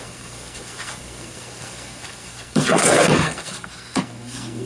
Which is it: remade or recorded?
remade